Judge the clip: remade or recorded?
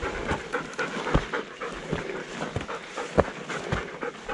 recorded